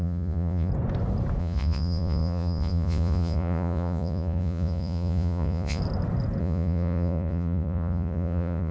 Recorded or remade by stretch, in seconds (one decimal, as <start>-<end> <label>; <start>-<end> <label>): 0.0-0.7 remade; 0.7-1.4 recorded; 1.4-5.8 remade; 5.8-6.4 recorded; 6.4-8.7 remade